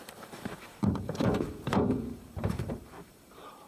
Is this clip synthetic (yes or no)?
yes